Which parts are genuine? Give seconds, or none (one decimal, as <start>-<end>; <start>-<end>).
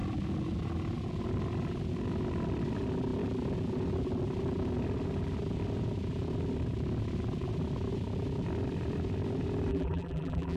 0.0-9.7